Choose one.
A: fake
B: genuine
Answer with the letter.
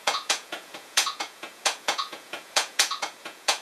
A